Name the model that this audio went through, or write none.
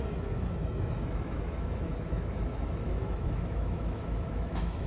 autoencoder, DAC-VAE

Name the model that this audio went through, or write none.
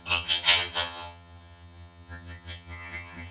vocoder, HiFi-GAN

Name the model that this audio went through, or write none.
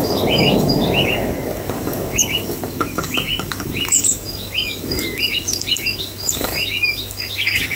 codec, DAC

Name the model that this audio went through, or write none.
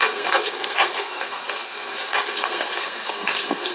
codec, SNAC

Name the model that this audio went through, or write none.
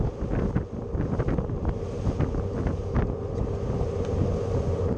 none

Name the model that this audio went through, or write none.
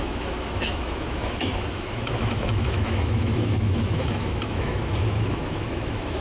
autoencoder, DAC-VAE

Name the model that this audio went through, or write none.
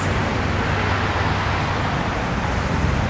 none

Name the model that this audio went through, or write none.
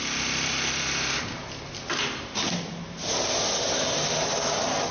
none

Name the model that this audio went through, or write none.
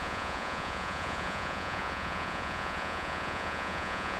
vocoder, Vocos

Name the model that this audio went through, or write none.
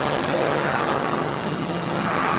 vocoder, HiFi-GAN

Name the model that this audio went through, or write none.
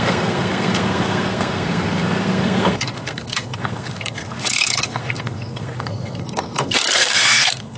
codec, SNAC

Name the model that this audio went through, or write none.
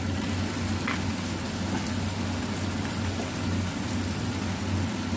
none